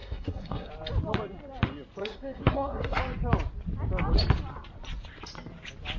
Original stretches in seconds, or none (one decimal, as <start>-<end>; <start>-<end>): 0.7-2.0; 3.0-6.0